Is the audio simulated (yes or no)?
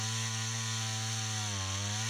no